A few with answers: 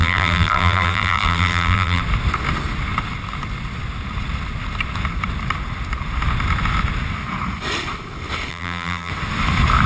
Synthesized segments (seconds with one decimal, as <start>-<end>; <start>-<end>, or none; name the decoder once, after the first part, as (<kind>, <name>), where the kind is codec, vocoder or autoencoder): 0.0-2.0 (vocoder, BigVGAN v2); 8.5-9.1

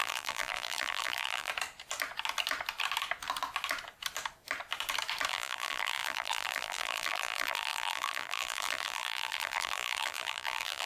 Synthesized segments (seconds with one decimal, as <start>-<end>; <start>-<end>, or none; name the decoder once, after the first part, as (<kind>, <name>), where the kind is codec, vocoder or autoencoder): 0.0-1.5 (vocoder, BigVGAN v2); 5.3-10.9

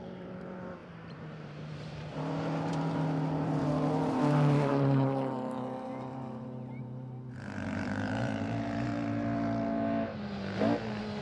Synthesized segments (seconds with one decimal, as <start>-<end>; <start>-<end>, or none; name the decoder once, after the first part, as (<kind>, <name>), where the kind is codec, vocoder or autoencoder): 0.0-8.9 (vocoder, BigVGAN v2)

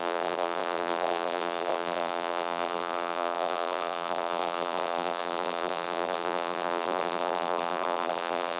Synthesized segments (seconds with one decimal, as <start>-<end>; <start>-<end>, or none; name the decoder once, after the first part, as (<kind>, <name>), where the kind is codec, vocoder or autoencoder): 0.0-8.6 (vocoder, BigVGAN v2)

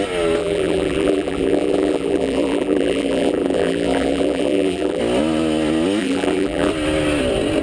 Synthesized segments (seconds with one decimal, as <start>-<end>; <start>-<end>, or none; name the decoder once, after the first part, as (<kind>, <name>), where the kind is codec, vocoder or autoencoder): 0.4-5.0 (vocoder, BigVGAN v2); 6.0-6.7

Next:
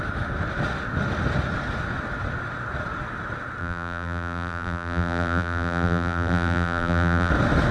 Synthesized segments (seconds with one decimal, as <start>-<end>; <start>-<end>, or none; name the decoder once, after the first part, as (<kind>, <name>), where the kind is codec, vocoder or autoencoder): 3.6-7.3 (vocoder, BigVGAN v2)

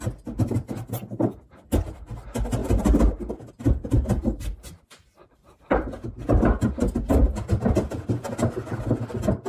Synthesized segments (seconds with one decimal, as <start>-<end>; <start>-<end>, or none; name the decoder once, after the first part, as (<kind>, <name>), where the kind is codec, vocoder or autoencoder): 2.6-3.5 (vocoder, BigVGAN v2)